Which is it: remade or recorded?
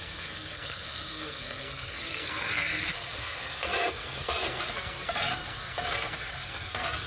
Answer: remade